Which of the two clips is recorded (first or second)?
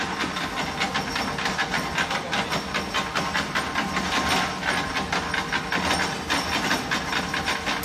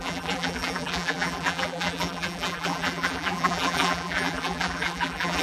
first